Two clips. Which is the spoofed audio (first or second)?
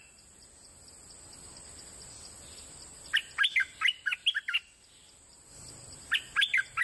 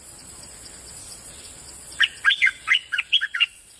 second